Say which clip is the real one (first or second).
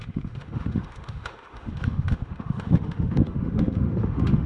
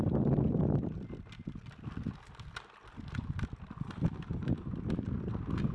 second